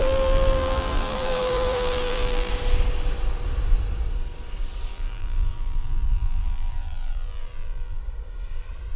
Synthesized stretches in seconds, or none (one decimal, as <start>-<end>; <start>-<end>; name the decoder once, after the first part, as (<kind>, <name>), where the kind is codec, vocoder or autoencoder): 0.0-2.5 (vocoder, BigVGAN v2); 4.9-8.0